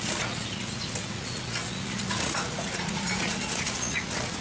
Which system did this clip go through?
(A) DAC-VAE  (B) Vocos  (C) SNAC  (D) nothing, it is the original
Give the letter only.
B